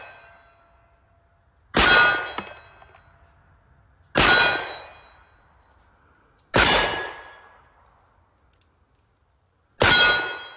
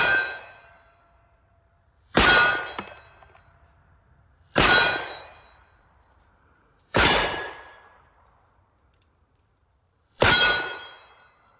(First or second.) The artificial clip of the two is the second